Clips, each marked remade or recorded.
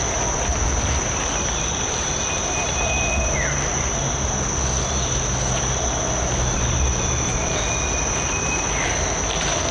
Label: recorded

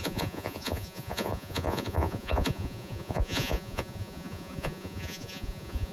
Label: remade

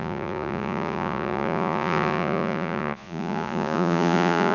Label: remade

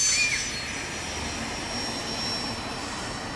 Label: recorded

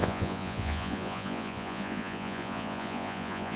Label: remade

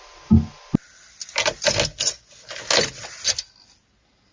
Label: recorded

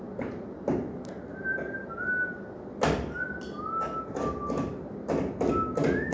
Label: recorded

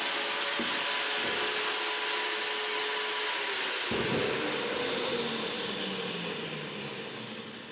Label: recorded